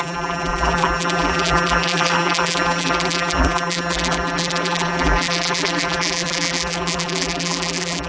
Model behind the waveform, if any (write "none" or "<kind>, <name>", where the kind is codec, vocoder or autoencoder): vocoder, BigVGAN v2